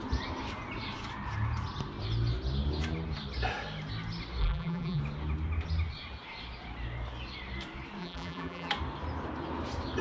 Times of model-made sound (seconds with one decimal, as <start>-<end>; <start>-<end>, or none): 4.4-5.0; 8.0-8.7